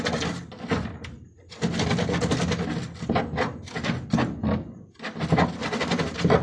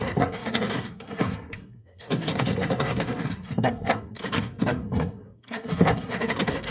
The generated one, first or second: second